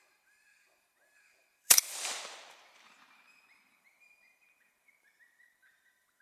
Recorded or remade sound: remade